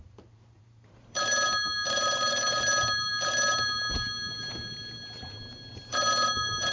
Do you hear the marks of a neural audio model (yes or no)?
yes